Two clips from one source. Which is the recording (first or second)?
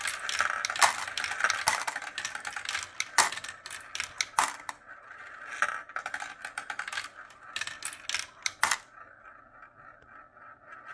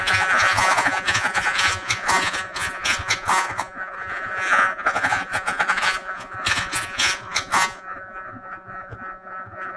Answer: first